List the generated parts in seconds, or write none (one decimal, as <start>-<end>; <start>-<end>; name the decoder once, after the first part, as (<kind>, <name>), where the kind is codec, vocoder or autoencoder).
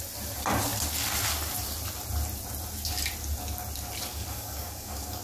4.1-5.2 (codec, DAC)